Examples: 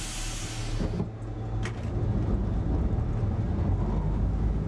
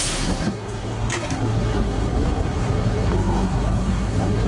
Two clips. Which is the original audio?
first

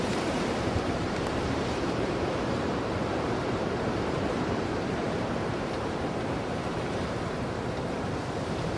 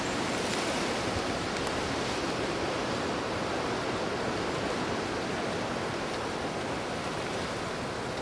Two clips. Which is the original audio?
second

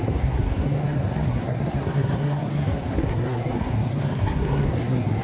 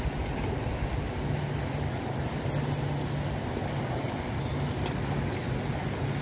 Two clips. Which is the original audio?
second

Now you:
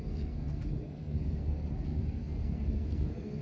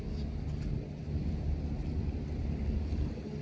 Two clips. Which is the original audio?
second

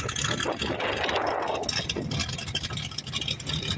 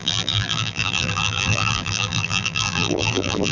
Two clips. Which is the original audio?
first